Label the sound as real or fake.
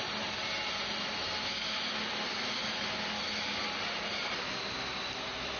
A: real